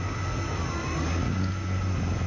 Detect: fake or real real